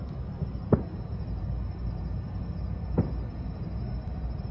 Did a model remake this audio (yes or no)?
no